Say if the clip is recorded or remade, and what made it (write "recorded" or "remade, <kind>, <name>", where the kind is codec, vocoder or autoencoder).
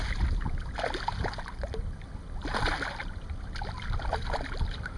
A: recorded